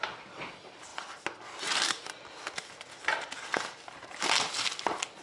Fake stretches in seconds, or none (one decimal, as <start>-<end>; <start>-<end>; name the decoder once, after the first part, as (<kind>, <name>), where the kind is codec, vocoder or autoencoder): none